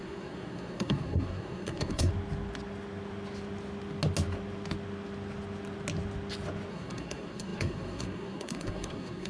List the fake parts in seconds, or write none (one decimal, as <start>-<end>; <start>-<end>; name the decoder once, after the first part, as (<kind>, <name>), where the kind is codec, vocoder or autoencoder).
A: 0.0-2.1 (codec, SNAC); 6.7-9.3